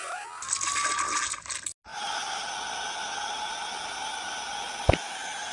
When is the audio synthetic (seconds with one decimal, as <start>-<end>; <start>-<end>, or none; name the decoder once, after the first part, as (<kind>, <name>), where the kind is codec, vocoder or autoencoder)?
none